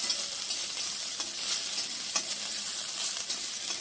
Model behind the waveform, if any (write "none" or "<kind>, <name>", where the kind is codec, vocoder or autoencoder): none